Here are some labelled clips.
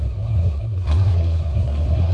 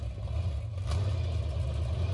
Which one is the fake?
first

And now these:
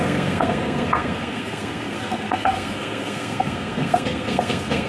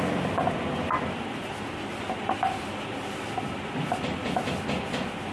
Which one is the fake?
first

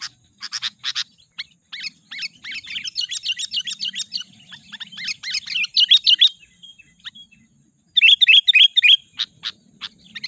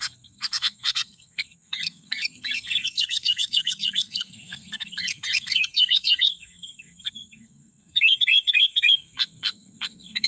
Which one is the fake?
second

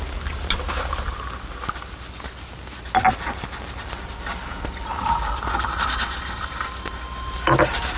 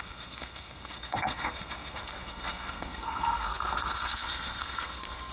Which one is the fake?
second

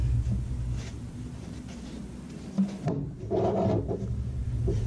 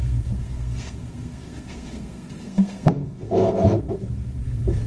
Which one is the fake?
second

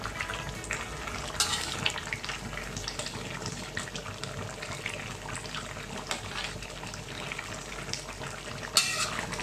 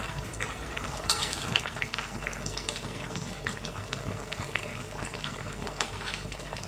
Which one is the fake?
second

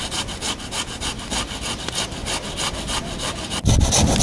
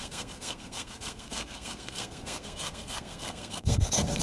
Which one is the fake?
second